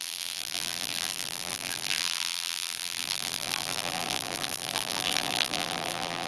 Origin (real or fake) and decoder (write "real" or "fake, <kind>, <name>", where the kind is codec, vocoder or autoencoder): fake, vocoder, BigVGAN v2